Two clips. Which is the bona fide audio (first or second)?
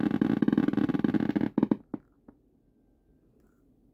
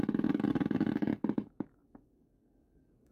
first